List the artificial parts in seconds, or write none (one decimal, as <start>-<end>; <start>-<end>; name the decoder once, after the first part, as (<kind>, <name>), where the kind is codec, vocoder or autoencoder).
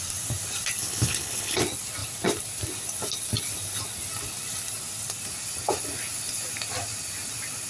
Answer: 0.8-1.6 (codec, HILCodec)